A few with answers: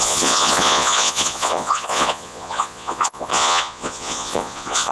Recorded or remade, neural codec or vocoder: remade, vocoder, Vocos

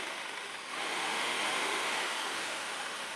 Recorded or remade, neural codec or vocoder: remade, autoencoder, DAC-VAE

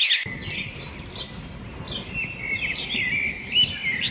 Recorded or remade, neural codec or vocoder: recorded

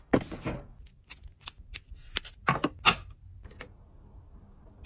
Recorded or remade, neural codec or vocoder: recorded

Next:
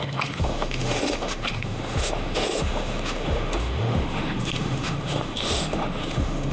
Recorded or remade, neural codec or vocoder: remade, autoencoder, DAC-VAE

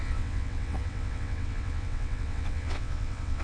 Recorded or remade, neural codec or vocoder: remade, vocoder, WaveNeXt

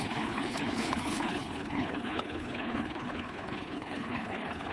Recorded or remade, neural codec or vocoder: remade, codec, HILCodec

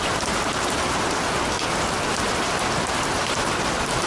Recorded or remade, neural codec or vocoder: recorded